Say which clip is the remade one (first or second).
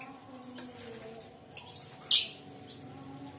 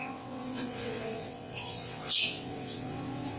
second